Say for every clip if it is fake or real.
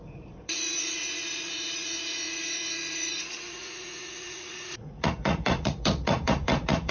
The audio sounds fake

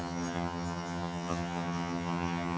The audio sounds fake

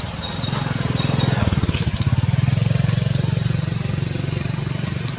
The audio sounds real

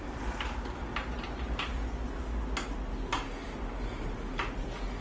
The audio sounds real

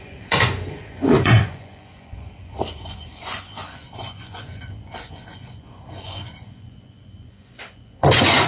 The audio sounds fake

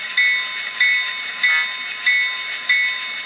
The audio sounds real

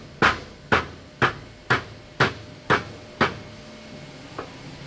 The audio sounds real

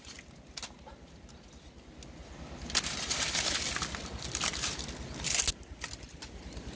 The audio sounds real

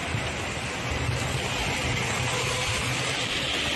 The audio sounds real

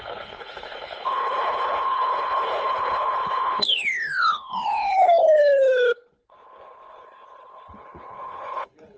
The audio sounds fake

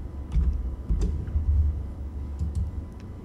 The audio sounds fake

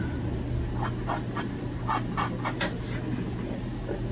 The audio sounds real